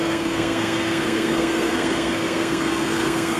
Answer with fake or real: fake